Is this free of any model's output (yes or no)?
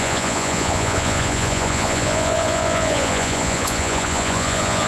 no